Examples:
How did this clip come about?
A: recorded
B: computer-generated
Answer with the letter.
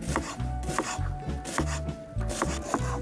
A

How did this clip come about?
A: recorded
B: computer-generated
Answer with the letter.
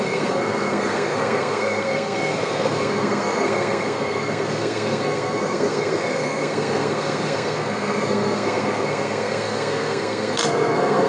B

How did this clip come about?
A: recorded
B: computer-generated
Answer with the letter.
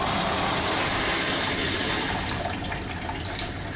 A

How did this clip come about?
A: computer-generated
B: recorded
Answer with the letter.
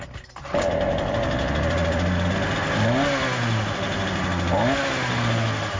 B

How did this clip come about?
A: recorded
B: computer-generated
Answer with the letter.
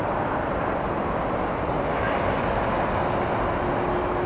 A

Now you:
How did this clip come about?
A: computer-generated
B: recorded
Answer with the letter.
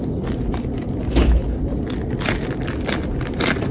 B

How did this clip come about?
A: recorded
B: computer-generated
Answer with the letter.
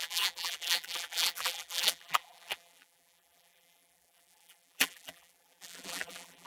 B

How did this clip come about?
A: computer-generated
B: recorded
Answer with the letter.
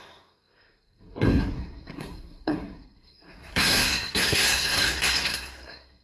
A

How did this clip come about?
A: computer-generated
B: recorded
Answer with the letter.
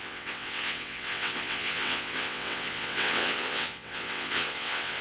A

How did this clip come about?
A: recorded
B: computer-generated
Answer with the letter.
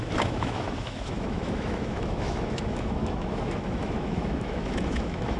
B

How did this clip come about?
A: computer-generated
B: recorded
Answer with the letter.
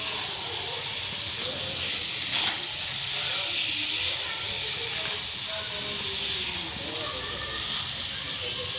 B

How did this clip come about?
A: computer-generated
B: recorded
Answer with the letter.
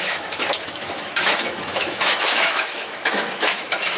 A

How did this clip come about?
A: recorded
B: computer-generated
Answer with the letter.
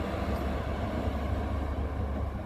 A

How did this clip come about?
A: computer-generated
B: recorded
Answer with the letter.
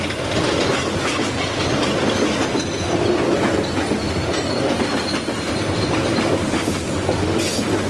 B